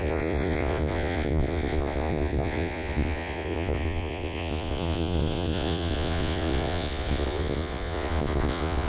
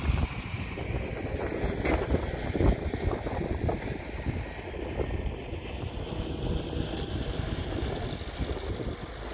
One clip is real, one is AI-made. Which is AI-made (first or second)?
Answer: first